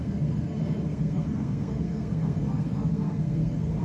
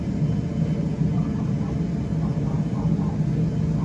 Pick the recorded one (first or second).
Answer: second